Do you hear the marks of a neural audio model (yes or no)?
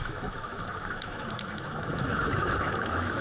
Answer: yes